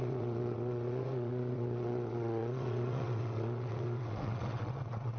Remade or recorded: remade